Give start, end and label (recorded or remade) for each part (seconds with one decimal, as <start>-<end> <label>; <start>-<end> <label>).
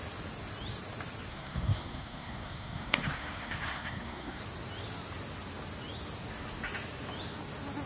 0.0-1.3 recorded; 1.3-4.4 remade; 4.4-7.9 recorded